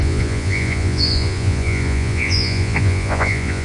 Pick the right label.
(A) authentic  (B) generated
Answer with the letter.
B